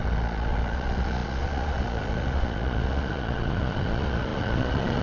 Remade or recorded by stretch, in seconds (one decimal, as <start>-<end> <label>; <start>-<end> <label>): 0.0-5.0 remade